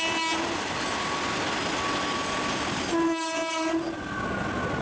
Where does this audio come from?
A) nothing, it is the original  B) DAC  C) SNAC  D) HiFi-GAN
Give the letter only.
A